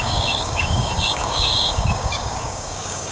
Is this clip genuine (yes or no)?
no